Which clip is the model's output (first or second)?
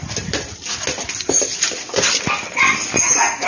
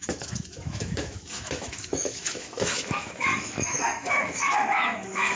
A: second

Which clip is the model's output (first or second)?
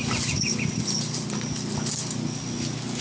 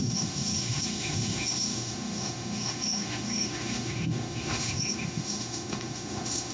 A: second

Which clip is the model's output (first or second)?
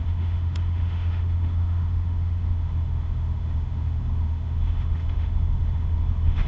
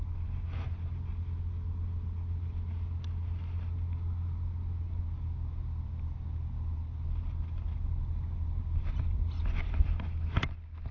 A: first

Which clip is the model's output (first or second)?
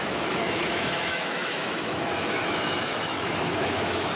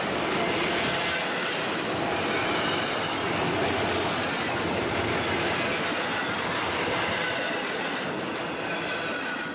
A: first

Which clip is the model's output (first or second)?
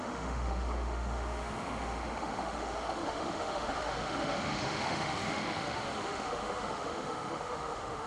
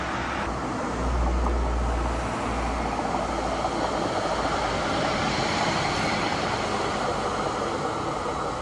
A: first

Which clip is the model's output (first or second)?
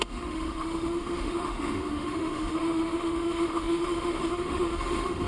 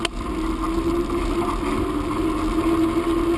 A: first